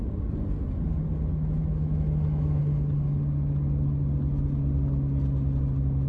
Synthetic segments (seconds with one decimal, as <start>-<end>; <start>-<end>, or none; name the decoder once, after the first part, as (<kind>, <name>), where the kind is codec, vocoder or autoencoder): 1.6-2.6 (autoencoder, DAC-VAE)

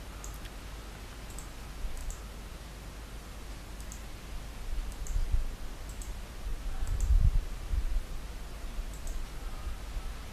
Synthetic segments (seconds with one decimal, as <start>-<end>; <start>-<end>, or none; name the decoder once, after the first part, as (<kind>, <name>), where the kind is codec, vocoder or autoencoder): none

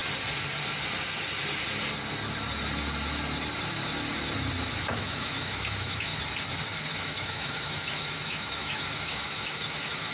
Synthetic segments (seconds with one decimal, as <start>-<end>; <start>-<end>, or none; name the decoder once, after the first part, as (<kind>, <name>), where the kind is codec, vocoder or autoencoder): 4.8-6.1 (autoencoder, DAC-VAE); 6.9-10.1